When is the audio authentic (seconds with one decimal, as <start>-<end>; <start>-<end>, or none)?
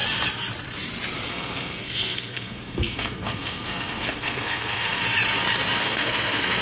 0.0-1.3; 5.0-5.8